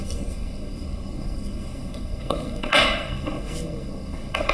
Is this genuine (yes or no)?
no